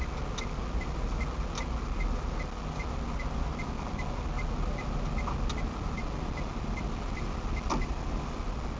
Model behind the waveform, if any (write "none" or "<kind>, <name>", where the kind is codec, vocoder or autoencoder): none